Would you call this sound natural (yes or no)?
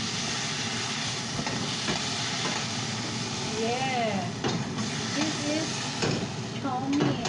yes